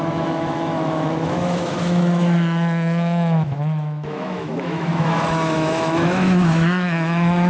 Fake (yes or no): yes